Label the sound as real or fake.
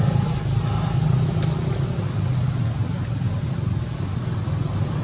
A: real